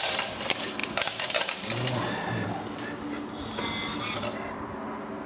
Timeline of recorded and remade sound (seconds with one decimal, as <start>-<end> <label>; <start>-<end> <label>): 0.0-0.8 recorded; 0.8-1.5 remade; 1.5-5.3 recorded